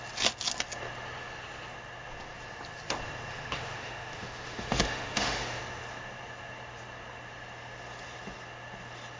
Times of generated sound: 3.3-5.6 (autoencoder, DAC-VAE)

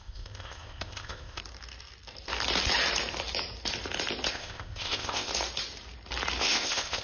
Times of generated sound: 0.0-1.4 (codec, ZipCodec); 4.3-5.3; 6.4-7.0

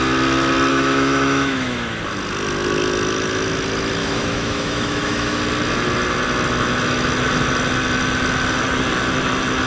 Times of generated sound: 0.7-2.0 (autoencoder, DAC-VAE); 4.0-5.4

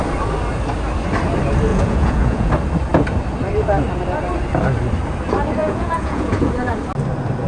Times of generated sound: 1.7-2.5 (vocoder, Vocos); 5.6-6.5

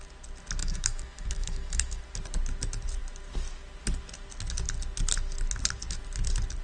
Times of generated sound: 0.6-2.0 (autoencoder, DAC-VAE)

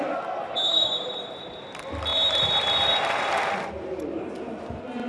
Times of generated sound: none

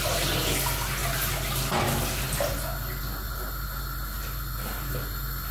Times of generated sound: none